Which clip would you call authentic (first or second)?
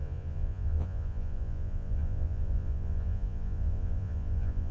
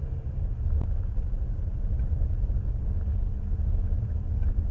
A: second